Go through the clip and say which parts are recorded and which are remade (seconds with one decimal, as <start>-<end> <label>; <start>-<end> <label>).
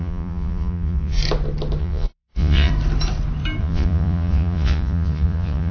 0.0-1.2 remade; 1.2-1.8 recorded; 1.8-2.7 remade; 2.7-3.6 recorded; 3.6-5.7 remade